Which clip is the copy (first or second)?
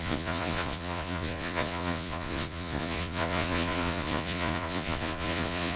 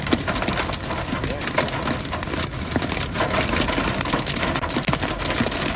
first